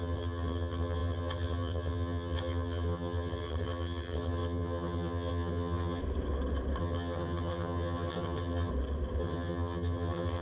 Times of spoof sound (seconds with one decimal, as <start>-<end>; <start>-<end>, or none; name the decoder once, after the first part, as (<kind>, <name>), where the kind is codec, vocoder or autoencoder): 0.0-6.0 (vocoder, HiFi-GAN); 6.8-8.7; 9.2-10.4